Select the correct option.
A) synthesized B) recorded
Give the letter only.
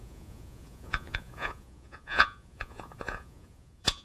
A